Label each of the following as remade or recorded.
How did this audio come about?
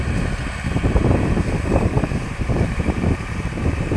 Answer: remade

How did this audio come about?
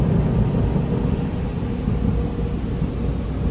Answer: recorded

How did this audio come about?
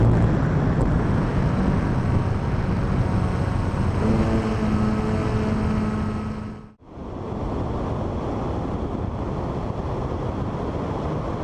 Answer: recorded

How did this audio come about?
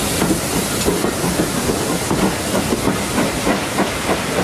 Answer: recorded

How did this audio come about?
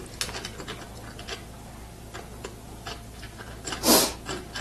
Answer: recorded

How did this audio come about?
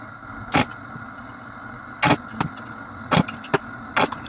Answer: recorded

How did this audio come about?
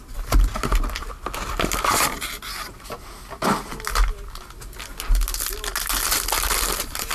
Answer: recorded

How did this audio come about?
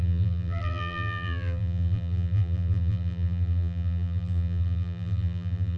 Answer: remade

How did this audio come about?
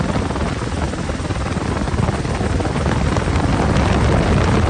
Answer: recorded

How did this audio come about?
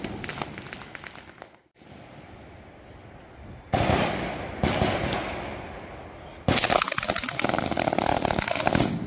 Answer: recorded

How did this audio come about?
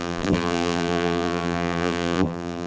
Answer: remade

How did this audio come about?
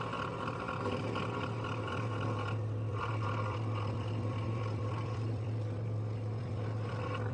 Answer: remade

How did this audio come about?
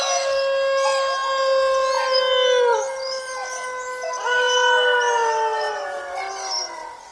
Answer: recorded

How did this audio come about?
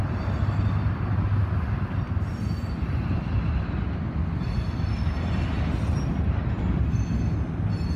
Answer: recorded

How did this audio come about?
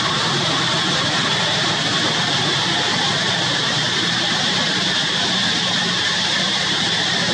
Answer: remade